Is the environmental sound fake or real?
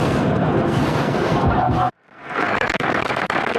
fake